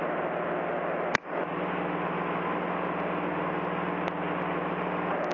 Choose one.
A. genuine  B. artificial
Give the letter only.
A